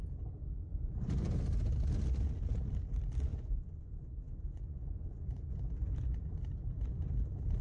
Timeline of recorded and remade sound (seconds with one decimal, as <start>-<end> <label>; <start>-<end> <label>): 0.0-0.7 recorded; 0.7-1.3 remade; 1.3-3.3 recorded; 3.3-5.6 remade; 5.6-7.6 recorded